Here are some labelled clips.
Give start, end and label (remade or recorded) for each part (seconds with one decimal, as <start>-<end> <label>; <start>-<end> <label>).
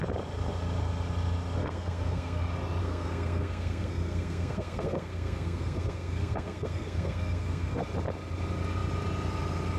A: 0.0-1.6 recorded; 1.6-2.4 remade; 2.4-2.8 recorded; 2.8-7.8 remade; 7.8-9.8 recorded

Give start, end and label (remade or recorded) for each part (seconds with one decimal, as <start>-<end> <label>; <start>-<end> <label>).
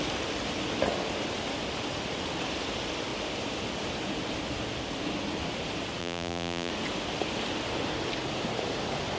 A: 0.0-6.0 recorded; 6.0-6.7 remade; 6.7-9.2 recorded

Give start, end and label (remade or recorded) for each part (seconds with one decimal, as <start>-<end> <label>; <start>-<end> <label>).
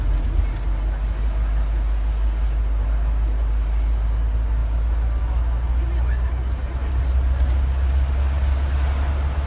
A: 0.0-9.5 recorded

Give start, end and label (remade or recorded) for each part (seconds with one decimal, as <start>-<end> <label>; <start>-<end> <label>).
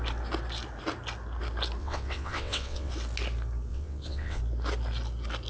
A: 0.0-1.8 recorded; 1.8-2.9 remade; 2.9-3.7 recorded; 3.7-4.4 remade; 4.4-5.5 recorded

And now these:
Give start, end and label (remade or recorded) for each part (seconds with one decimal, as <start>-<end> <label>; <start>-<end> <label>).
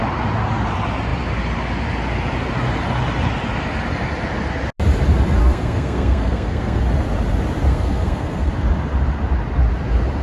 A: 0.0-5.4 recorded; 5.4-6.8 remade; 6.8-7.7 recorded; 7.7-8.5 remade; 8.5-10.2 recorded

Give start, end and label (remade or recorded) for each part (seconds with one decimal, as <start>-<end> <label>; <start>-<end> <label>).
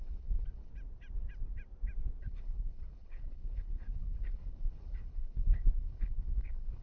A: 0.0-0.7 remade; 0.7-2.2 recorded; 2.2-6.8 remade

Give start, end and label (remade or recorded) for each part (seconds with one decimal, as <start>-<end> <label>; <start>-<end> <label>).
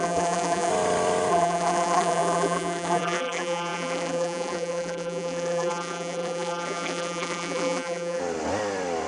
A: 0.0-0.7 remade; 0.7-1.3 recorded; 1.3-8.2 remade; 8.2-9.1 recorded